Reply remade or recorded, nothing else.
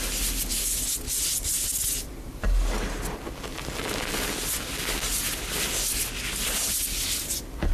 recorded